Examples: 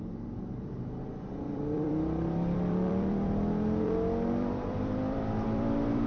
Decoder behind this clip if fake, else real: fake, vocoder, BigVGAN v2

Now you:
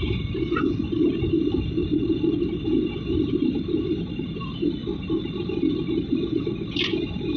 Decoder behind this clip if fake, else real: real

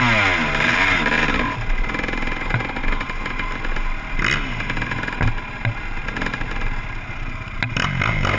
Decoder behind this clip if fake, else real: real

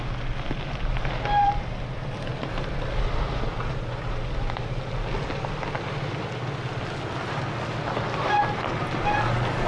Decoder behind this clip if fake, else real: real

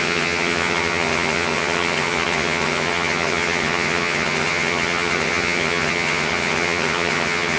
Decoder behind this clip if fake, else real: fake, vocoder, HiFi-GAN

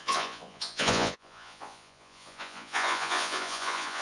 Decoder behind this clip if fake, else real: fake, vocoder, Vocos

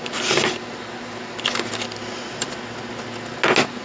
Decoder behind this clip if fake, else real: real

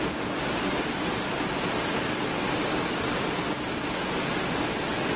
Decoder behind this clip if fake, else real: real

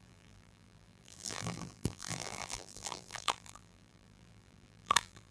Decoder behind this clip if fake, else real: fake, vocoder, BigVGAN v2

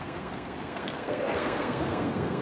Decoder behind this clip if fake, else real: fake, codec, SNAC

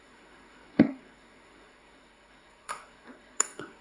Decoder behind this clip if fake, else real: fake, codec, SNAC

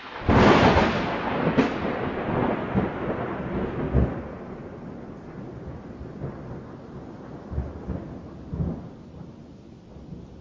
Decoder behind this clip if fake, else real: real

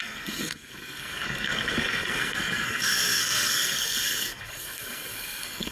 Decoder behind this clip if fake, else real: fake, codec, SNAC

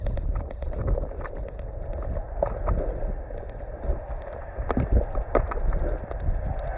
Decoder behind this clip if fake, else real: real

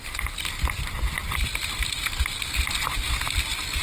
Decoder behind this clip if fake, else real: real